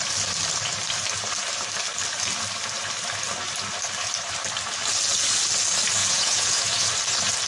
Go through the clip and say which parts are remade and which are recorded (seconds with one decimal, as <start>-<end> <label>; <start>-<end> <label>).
0.0-6.0 recorded; 6.0-6.9 remade; 6.9-7.5 recorded